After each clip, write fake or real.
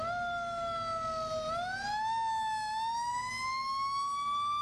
real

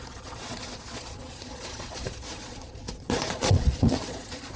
fake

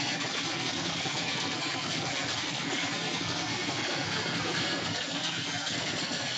fake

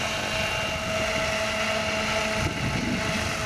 real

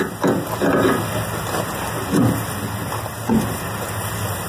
real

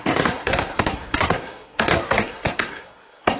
fake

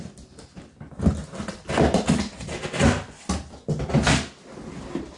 real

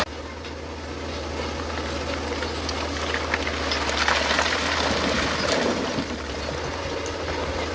real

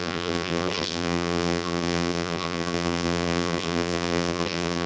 fake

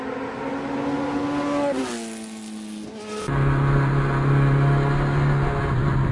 real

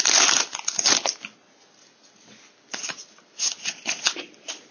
real